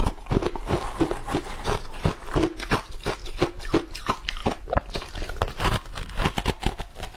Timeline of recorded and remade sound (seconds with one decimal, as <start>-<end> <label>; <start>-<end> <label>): 0.0-1.2 recorded; 1.2-1.8 remade; 1.8-4.4 recorded; 4.4-5.6 remade; 5.6-7.2 recorded